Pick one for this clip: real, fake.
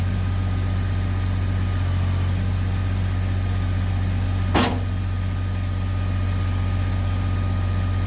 real